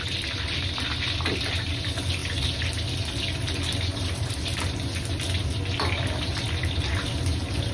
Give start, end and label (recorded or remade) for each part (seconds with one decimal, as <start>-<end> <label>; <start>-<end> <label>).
0.0-7.7 recorded